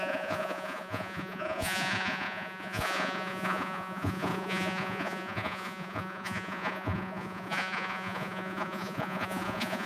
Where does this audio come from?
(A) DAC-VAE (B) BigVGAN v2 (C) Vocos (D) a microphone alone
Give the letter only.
C